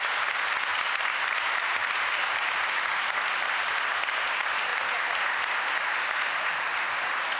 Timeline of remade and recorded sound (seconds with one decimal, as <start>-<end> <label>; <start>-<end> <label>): 0.0-7.4 recorded